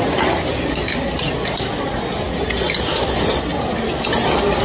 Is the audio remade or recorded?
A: recorded